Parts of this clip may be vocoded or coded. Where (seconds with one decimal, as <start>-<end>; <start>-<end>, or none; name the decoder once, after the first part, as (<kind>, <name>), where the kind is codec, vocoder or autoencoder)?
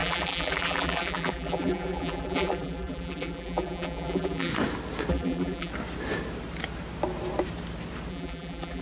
0.0-4.5 (vocoder, BigVGAN v2); 5.1-5.7; 8.1-8.8